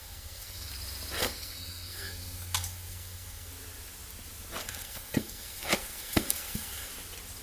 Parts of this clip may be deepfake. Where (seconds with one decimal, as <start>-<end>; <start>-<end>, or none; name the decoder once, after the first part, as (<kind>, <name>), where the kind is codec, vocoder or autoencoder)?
0.0-0.7 (codec, SNAC); 1.2-3.5; 4.6-6.9